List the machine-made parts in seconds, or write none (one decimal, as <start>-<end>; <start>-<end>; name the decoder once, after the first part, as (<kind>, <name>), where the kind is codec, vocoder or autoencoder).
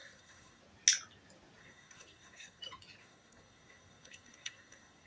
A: 0.0-0.6 (codec, SNAC); 1.6-2.6; 3.0-5.1